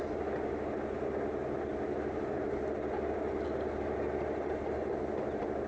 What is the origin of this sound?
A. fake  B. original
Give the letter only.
B